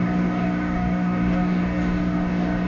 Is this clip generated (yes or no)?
yes